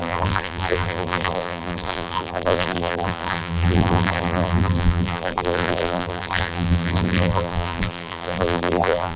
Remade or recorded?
remade